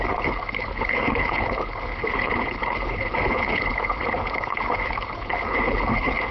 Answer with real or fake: fake